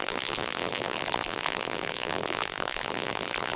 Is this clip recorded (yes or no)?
no